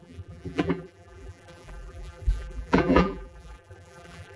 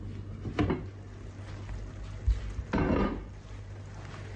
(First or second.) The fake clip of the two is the first